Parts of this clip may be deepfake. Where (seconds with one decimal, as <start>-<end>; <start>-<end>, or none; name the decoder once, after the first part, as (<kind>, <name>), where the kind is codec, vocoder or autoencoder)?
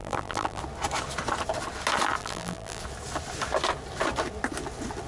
0.0-0.6 (vocoder, BigVGAN v2); 2.2-2.8